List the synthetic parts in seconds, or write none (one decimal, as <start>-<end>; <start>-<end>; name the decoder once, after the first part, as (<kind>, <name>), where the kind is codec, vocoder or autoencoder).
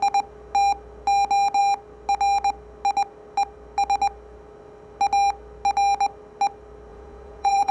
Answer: 6.9-7.7 (vocoder, Vocos)